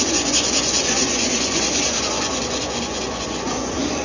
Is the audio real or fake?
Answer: fake